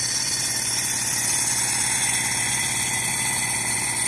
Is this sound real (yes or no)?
no